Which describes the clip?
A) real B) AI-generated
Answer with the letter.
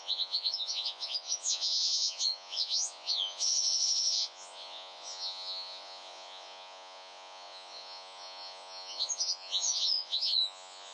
B